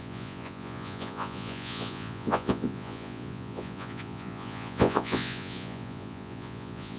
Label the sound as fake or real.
fake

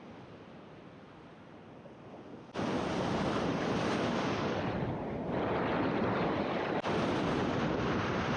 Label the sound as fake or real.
fake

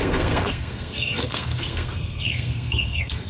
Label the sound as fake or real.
fake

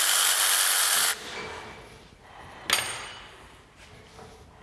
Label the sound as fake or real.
real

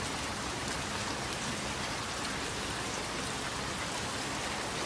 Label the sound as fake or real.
real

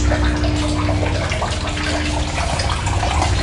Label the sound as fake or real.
real